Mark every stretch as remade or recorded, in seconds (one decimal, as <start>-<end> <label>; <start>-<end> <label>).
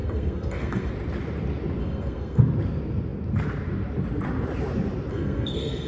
0.0-0.9 remade; 0.9-1.8 recorded; 1.8-2.4 remade; 2.4-5.1 recorded; 5.1-5.9 remade